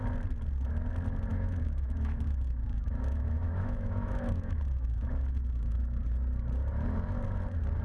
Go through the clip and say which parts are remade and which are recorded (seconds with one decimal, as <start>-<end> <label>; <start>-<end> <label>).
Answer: 0.0-1.3 recorded; 1.3-6.0 remade; 6.0-7.8 recorded